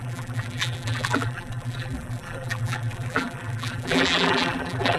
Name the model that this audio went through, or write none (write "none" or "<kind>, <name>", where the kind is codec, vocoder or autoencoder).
vocoder, BigVGAN v2